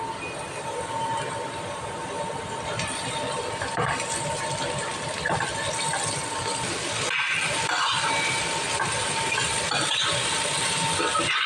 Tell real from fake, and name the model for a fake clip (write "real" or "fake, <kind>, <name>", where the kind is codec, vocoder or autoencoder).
real